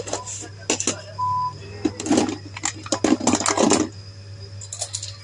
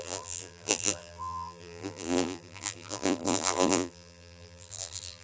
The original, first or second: first